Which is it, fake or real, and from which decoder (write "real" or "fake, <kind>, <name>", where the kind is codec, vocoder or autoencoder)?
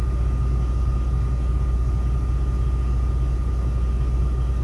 real